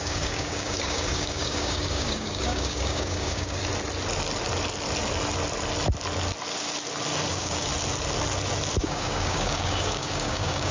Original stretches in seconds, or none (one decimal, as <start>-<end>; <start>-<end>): 3.6-7.3; 7.7-8.8